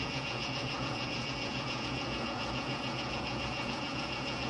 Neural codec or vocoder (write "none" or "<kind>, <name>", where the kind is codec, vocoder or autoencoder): vocoder, Vocos